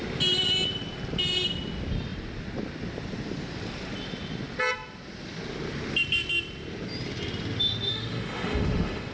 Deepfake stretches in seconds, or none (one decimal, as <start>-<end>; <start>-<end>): 7.9-9.1